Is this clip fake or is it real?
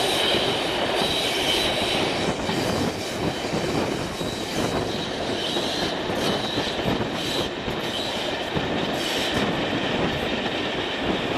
real